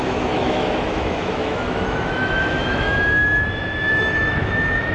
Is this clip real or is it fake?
fake